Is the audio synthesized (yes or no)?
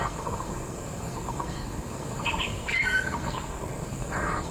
yes